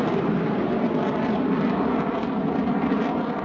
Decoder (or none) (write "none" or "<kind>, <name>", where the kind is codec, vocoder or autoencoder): none